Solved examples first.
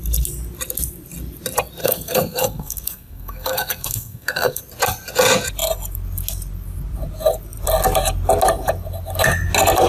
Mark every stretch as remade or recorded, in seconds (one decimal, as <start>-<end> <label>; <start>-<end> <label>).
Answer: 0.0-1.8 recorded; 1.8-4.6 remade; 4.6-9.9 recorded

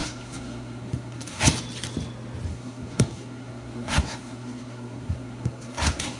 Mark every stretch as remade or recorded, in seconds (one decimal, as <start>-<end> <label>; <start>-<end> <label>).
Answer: 0.0-1.4 remade; 1.4-2.5 recorded; 2.5-6.2 remade

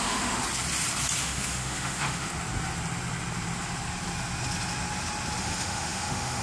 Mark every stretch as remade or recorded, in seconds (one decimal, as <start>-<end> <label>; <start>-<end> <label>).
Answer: 0.0-0.4 remade; 0.4-1.2 recorded; 1.2-2.3 remade; 2.3-5.4 recorded; 5.4-6.4 remade